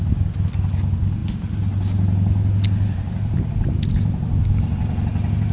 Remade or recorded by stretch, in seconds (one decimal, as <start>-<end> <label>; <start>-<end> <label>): 0.0-5.5 recorded